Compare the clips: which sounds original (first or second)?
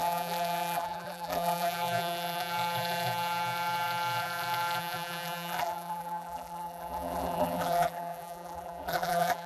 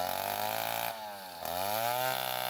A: second